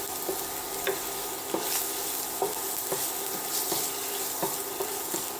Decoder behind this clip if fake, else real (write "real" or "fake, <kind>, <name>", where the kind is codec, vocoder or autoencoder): real